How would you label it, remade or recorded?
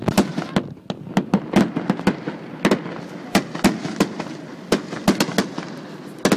recorded